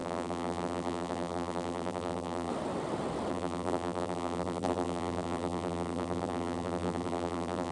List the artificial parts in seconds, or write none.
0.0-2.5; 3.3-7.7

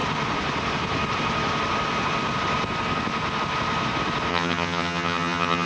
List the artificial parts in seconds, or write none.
4.3-5.7

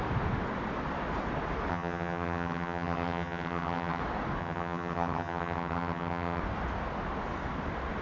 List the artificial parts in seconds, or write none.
1.7-4.0; 4.4-6.4

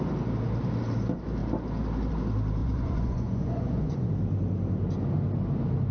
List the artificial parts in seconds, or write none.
2.6-4.1

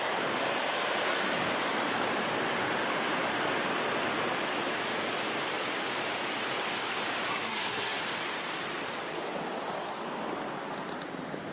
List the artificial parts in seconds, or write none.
7.3-8.0

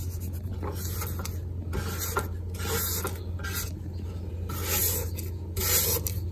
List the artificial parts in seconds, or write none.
none